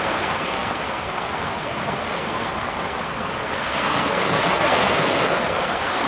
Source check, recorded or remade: remade